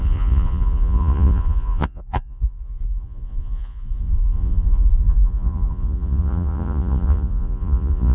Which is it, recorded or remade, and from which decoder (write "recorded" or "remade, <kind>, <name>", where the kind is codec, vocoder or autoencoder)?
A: remade, vocoder, Vocos